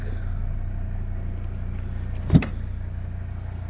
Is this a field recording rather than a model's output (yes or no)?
yes